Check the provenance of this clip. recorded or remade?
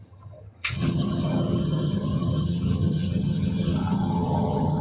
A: remade